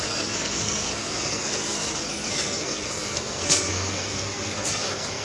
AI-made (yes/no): yes